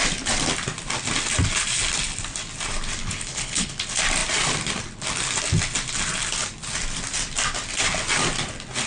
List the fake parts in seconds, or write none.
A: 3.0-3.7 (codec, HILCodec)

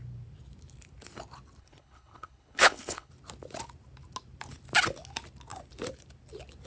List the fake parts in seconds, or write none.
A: 1.6-3.1 (codec, HILCodec)

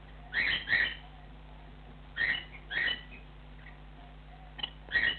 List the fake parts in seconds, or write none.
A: none

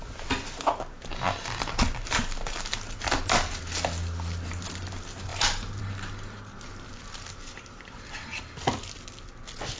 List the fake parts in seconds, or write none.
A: none